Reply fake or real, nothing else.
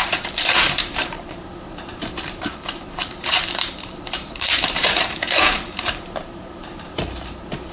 fake